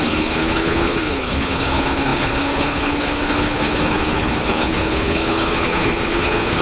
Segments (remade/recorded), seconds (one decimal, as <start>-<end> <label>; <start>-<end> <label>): 0.0-6.6 remade